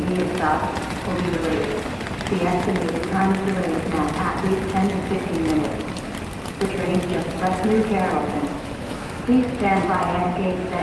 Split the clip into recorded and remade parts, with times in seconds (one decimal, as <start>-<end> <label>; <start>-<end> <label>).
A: 0.0-8.5 recorded; 8.5-9.2 remade; 9.2-10.8 recorded